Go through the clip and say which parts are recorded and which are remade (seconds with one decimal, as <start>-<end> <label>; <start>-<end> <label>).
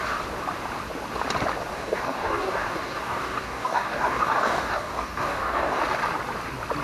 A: 0.0-1.7 recorded; 1.7-5.8 remade; 5.8-6.8 recorded